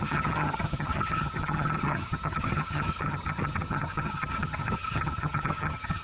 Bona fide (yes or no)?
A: no